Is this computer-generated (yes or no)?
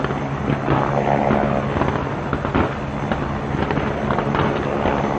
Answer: no